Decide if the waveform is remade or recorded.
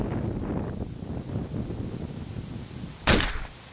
recorded